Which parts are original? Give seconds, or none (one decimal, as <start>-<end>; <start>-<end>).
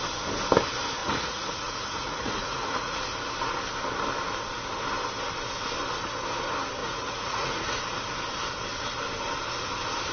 0.0-1.0; 3.0-6.8; 7.8-10.1